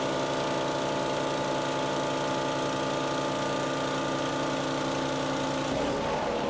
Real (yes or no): yes